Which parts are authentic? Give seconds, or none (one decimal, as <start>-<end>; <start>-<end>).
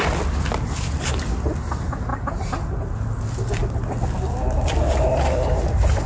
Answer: 0.0-2.1; 2.8-6.1